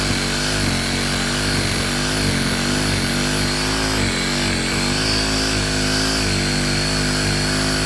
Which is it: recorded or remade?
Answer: recorded